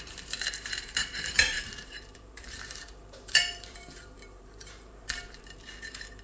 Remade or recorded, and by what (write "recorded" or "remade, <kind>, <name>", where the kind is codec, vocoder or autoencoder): remade, vocoder, BigVGAN v2